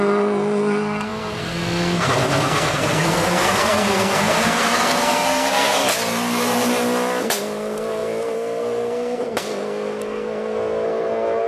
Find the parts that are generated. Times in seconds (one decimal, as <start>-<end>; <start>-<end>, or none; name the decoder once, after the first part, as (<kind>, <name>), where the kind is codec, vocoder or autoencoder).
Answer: 0.0-5.8 (codec, SNAC); 7.2-11.5